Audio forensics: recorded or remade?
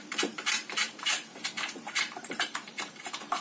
remade